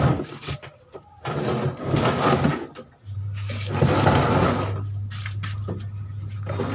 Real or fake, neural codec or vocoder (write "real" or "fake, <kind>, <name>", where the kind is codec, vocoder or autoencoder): real